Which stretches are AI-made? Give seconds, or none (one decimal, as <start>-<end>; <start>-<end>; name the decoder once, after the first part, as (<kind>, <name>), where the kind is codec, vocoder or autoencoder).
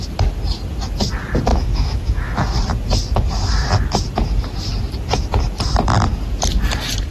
1.5-2.6 (autoencoder, DAC-VAE)